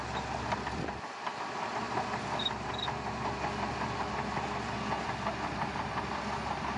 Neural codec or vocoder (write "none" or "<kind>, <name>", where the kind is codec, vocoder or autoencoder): none